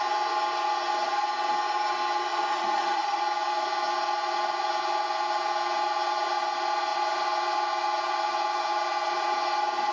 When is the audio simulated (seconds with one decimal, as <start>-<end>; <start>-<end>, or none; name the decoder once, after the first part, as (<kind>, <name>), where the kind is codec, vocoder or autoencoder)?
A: 2.3-3.2 (vocoder, Vocos)